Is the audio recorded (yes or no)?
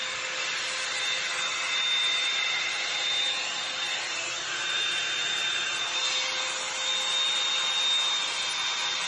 yes